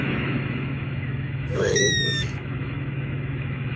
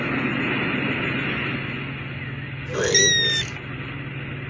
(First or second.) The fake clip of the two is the first